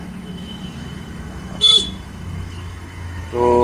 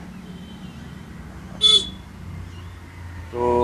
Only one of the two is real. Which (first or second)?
second